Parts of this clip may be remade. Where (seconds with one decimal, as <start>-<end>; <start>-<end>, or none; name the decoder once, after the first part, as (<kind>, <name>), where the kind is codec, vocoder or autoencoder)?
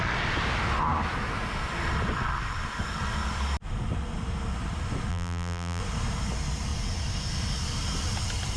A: 5.1-5.8 (vocoder, BigVGAN v2)